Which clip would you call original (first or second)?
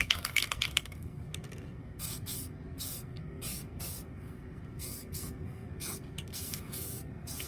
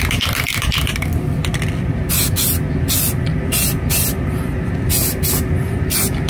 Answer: second